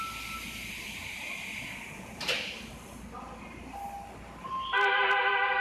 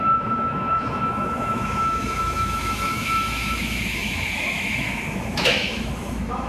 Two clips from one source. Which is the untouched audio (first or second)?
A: first